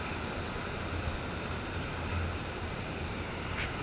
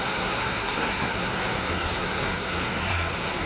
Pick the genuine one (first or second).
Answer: first